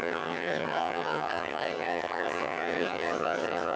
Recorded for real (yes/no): no